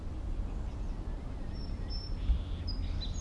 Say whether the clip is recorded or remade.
recorded